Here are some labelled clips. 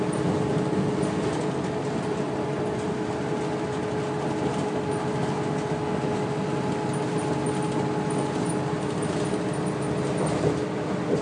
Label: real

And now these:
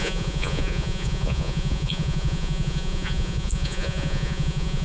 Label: fake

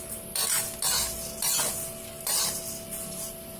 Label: real